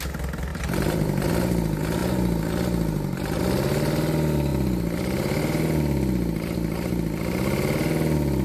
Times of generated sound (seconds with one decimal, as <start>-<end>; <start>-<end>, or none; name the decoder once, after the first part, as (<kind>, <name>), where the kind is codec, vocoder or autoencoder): 0.5-1.3 (vocoder, BigVGAN v2); 4.5-5.4